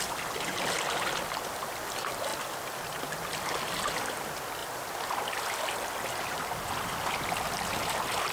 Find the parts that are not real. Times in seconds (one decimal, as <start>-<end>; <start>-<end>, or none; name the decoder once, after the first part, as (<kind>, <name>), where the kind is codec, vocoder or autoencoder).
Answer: none